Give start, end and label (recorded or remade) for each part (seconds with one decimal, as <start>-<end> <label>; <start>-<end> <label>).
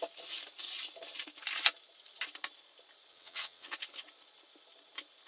0.0-3.1 recorded; 3.1-3.7 remade; 3.7-5.3 recorded